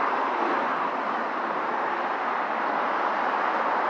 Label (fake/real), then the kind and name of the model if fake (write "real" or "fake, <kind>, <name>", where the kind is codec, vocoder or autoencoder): real